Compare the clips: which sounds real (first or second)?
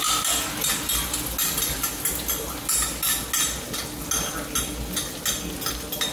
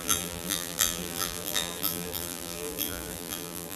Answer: first